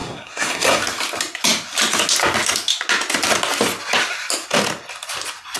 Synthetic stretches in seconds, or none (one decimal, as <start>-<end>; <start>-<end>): 0.0-0.8